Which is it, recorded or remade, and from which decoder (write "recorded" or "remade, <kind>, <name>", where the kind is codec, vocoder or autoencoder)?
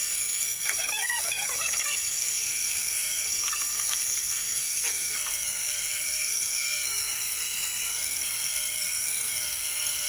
remade, codec, SNAC